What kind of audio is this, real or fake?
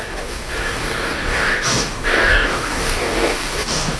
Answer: fake